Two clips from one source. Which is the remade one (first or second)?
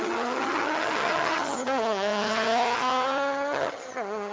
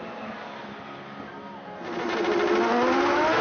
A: first